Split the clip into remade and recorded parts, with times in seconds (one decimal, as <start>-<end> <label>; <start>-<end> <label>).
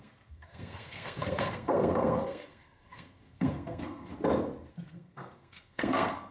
0.0-4.1 remade; 4.1-4.7 recorded; 4.7-6.3 remade